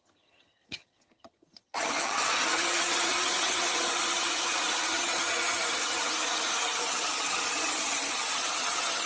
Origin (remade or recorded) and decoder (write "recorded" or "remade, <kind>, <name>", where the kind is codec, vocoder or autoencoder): remade, vocoder, HiFi-GAN